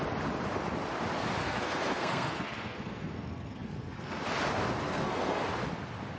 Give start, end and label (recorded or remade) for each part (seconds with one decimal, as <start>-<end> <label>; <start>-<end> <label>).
0.0-1.4 recorded; 1.4-4.2 remade; 4.2-4.8 recorded; 4.8-5.4 remade; 5.4-6.2 recorded